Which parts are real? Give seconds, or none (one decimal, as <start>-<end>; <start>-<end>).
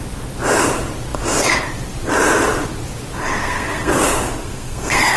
0.0-3.4; 4.0-4.4